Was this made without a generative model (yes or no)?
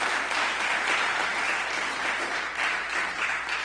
yes